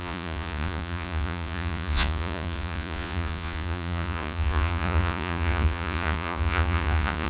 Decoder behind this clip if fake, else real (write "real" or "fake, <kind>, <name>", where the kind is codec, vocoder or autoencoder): fake, vocoder, Vocos